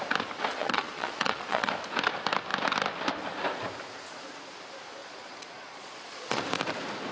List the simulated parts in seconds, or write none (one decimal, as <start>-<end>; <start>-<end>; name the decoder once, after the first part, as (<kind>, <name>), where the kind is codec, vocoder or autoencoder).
0.5-1.7 (vocoder, Vocos); 5.0-6.4